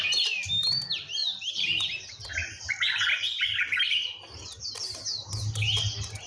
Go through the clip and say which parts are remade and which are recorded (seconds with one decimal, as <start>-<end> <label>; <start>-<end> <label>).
0.0-1.2 recorded; 1.2-5.0 remade; 5.0-6.3 recorded